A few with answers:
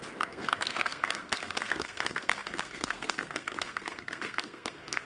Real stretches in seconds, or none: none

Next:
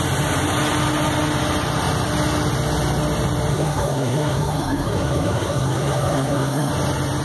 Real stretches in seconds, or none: 0.0-3.5; 6.7-7.2

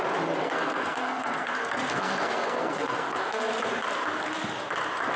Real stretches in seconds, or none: 0.0-0.4; 3.5-5.2

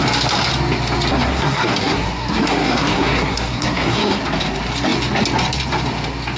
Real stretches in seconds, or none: 0.0-1.1; 4.2-6.4